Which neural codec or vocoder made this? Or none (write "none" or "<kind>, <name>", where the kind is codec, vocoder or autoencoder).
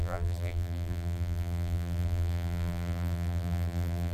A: vocoder, BigVGAN v2